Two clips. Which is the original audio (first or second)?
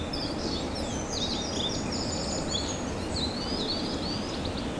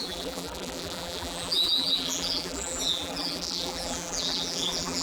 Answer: first